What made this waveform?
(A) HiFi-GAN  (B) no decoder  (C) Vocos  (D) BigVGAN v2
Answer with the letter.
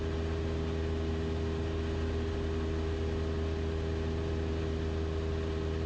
B